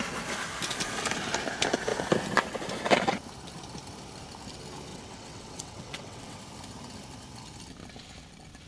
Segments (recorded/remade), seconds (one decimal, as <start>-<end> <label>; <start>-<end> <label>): 0.0-4.9 recorded; 4.9-6.4 remade; 6.4-8.7 recorded